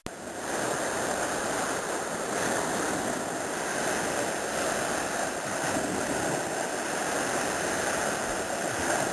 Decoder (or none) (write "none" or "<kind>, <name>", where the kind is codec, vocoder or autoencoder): none